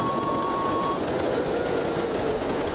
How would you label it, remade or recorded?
remade